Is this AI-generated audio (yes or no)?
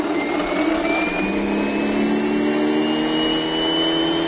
no